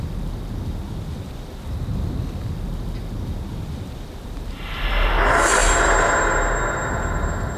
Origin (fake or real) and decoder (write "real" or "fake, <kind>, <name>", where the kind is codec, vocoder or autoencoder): real